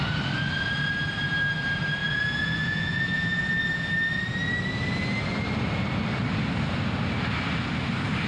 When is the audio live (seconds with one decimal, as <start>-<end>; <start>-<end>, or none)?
0.0-2.0; 3.9-8.3